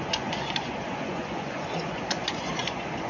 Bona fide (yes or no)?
no